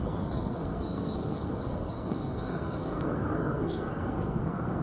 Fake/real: fake